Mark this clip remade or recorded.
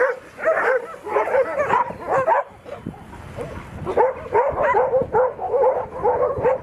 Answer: recorded